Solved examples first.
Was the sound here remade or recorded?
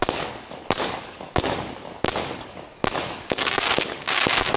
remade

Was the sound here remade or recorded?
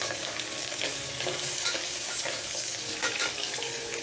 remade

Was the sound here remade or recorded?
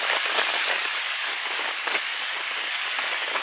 remade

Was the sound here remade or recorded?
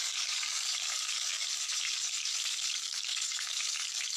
remade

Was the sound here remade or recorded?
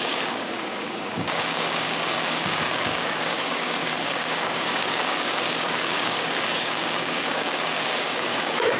remade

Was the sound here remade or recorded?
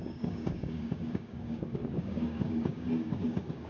remade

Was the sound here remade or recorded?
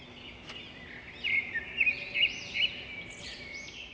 recorded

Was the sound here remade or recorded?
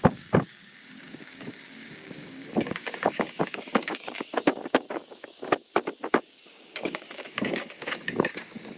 remade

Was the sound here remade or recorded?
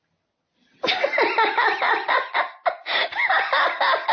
recorded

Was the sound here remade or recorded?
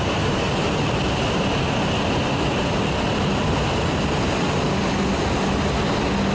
recorded